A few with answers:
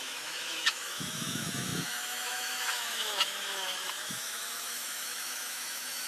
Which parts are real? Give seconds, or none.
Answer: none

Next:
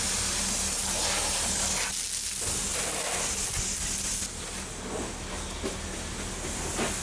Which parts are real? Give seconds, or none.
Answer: 0.0-7.0

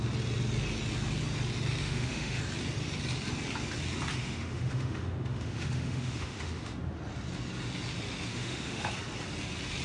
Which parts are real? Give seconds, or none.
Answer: 0.0-1.8; 2.4-4.2; 6.7-8.3; 8.9-9.8

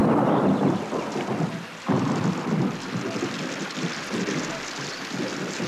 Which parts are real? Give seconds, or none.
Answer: 0.0-5.7